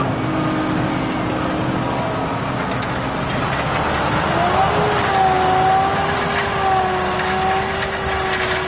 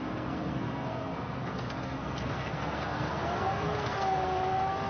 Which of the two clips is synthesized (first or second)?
second